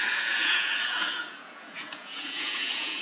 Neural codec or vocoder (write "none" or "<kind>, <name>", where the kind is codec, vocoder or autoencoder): vocoder, Vocos